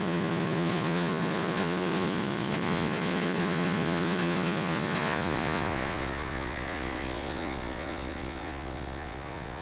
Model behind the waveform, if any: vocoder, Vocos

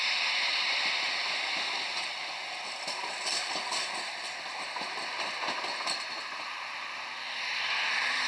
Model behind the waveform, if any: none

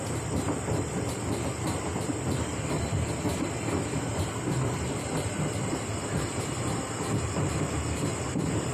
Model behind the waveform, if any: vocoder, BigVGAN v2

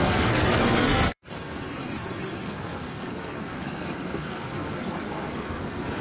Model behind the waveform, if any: codec, SNAC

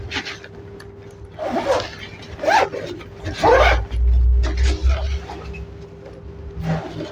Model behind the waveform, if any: none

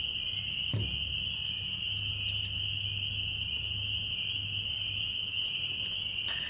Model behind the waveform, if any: none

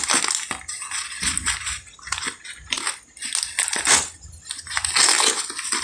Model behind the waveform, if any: none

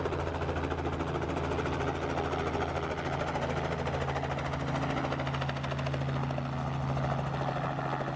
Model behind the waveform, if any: none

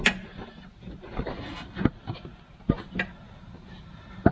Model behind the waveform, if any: none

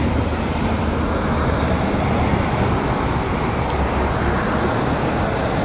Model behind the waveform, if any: none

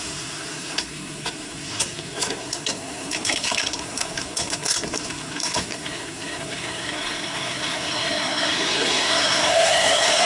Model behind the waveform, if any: codec, SNAC